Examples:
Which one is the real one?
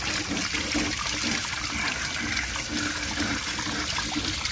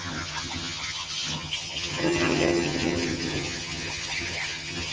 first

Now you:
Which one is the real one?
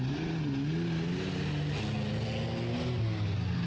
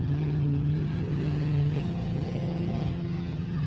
first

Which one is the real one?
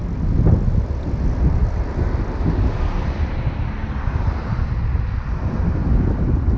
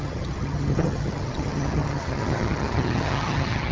first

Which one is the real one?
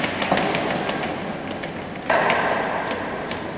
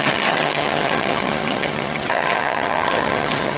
first